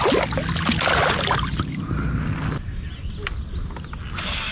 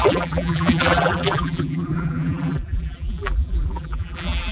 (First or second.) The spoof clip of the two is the second